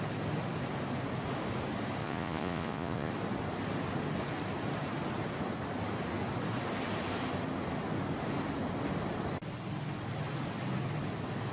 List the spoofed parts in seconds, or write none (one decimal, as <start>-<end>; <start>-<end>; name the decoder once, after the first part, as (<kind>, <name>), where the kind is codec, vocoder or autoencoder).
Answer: 2.0-3.1 (vocoder, Vocos)

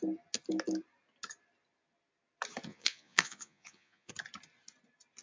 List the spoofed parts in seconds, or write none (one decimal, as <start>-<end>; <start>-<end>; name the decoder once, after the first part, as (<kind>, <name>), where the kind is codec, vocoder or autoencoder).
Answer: 2.7-4.1 (vocoder, Vocos)

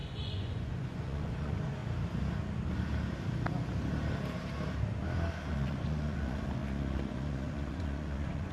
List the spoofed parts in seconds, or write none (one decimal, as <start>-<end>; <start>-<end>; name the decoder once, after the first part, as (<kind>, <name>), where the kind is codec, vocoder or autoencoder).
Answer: 0.0-1.8 (vocoder, Vocos); 5.5-8.5

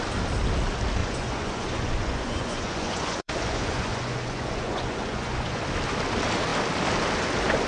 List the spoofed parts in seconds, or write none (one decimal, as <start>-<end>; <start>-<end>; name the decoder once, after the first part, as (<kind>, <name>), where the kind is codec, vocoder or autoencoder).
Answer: 1.0-5.6 (vocoder, Vocos)

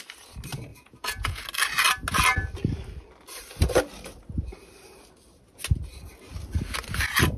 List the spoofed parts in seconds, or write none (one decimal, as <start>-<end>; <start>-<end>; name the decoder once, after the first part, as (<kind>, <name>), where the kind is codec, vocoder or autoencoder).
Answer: 0.7-1.4 (vocoder, Vocos)

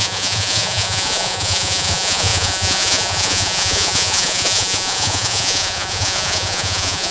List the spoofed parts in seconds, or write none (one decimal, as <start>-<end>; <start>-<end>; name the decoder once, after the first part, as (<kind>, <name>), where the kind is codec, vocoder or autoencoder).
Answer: 0.0-7.1 (vocoder, Vocos)